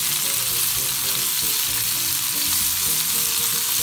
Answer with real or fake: real